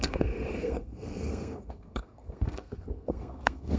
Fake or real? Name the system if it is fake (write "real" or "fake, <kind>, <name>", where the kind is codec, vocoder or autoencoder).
fake, codec, SNAC